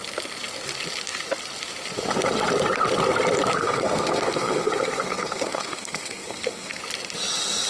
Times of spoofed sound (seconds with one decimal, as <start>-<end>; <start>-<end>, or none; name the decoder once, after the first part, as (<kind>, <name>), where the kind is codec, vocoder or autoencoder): 3.6-6.8 (codec, SNAC)